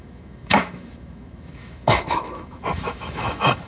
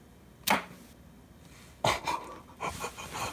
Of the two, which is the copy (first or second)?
first